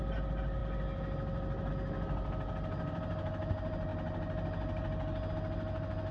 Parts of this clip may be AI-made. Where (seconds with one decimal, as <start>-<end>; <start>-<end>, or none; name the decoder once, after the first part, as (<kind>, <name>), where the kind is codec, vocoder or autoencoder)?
none